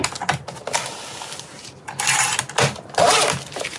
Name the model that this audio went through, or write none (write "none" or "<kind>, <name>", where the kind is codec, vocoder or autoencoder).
none